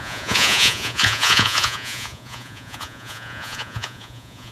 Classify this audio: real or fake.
fake